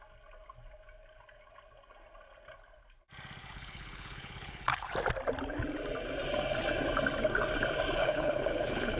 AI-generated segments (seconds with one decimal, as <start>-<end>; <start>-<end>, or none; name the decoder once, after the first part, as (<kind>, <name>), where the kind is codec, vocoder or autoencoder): 3.4-4.9 (codec, HILCodec); 8.0-9.0